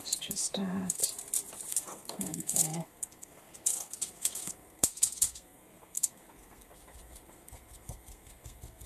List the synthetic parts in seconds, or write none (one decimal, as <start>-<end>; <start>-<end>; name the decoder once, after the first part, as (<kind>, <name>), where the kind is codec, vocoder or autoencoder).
0.0-1.0 (codec, SNAC); 1.7-8.9

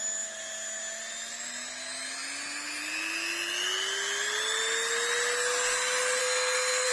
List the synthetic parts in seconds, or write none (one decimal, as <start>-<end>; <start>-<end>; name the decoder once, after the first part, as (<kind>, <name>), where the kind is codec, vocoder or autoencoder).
6.2-6.9 (codec, SNAC)

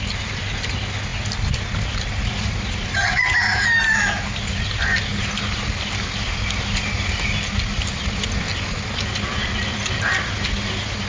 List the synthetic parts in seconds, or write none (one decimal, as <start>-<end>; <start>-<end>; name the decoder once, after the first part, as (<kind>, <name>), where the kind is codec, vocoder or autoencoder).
none

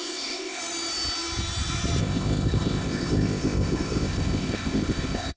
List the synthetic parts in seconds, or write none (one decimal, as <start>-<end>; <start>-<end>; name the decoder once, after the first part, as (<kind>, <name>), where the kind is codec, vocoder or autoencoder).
0.0-0.6 (codec, ZipCodec); 2.0-5.4